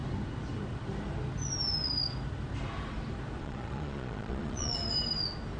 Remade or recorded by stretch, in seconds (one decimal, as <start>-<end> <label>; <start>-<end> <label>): 0.0-3.4 recorded; 3.4-4.8 remade; 4.8-5.6 recorded

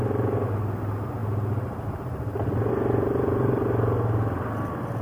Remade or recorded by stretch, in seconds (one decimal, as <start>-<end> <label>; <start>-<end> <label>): 0.0-5.0 recorded